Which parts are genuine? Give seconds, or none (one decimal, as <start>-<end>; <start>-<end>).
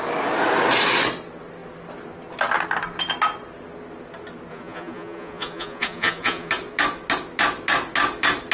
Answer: 0.0-4.5; 6.5-8.5